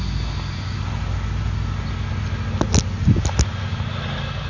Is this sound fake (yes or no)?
no